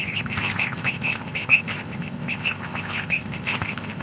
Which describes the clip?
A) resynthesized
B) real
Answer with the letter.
A